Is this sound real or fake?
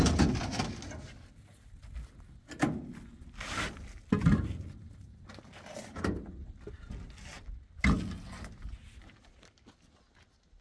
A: real